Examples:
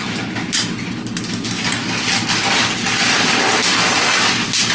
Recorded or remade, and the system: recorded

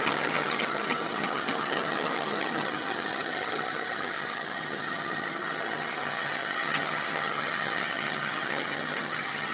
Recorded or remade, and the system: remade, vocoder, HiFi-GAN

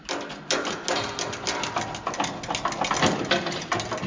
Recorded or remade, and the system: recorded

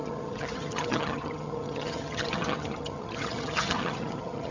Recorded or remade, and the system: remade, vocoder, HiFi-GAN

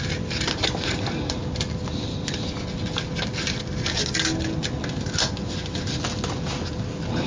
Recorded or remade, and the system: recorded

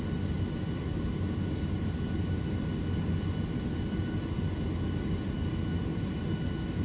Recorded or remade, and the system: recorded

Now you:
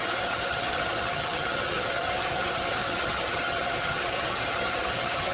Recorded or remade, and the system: remade, vocoder, HiFi-GAN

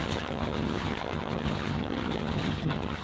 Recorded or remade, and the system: remade, vocoder, HiFi-GAN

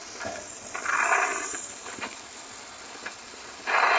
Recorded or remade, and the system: recorded